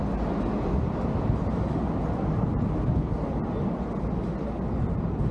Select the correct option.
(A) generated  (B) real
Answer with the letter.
B